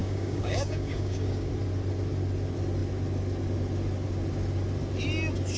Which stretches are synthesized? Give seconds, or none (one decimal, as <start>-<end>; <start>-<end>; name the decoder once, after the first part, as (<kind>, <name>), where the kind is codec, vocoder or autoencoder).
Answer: 0.0-1.5 (codec, DAC)